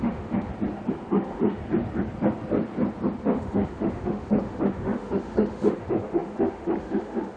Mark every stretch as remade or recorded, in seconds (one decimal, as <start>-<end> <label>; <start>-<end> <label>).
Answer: 0.0-0.5 remade; 0.5-1.1 recorded; 1.1-1.6 remade; 1.6-3.2 recorded; 3.2-7.4 remade